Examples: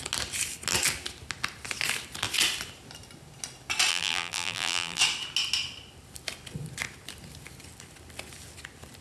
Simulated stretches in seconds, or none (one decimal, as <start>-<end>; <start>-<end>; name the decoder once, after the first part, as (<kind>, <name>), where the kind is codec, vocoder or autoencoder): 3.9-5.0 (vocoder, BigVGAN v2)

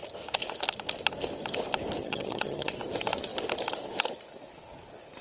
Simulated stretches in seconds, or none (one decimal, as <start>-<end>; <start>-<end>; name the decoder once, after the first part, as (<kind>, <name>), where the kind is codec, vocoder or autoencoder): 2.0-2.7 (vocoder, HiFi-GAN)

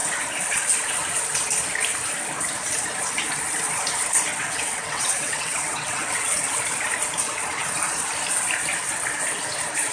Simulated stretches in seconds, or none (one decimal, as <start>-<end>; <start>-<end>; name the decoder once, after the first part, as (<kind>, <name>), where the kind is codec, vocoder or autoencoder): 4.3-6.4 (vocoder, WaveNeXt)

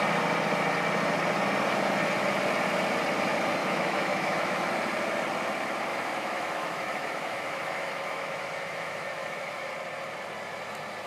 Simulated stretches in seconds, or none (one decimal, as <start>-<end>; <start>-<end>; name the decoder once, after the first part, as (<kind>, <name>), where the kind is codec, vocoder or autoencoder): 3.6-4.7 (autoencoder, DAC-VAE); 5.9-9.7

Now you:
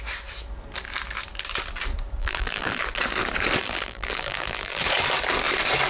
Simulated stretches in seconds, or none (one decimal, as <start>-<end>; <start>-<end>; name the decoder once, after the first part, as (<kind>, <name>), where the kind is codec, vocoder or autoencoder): 2.2-2.8 (vocoder, BigVGAN v2); 3.6-4.8

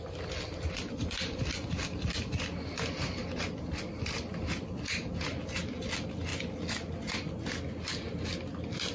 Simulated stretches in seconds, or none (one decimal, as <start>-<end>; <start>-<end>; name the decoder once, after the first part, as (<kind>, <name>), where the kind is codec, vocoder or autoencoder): none